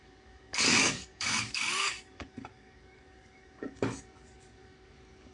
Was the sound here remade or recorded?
remade